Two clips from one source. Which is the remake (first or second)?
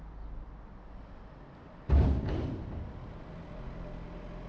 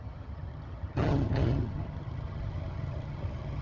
second